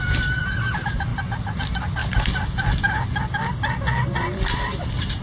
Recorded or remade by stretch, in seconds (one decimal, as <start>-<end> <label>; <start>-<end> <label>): 0.0-1.1 remade; 1.1-1.6 recorded; 1.6-2.0 remade; 2.0-4.2 recorded; 4.2-5.2 remade